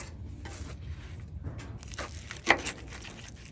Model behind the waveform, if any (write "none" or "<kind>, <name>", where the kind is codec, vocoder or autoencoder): none